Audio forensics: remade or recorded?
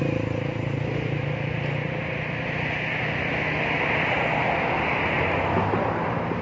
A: recorded